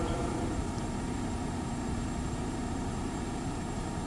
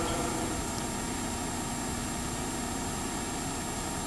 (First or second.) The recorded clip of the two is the second